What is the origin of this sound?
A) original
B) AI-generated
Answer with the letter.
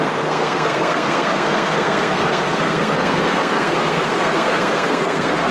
B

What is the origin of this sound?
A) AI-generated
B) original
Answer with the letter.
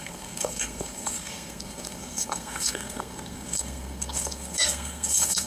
A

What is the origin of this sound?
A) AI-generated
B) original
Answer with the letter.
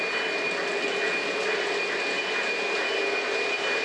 B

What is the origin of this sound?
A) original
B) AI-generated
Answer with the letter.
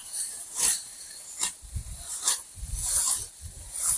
B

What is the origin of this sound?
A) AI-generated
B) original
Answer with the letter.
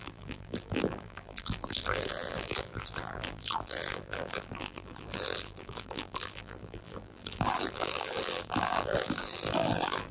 A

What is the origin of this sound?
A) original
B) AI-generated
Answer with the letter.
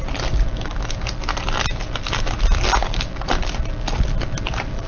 A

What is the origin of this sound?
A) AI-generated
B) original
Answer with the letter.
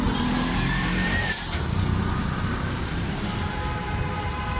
A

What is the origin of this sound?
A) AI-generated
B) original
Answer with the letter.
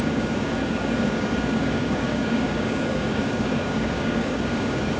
A